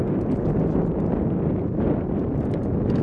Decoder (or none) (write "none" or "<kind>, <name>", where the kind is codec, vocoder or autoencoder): none